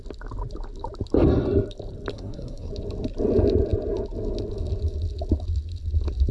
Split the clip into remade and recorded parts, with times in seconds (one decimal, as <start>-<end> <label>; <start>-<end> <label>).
0.0-2.1 recorded; 2.1-2.7 remade; 2.7-6.3 recorded